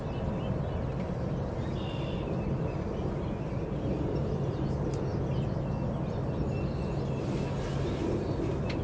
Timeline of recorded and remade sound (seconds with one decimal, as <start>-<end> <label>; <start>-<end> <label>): 0.0-8.8 recorded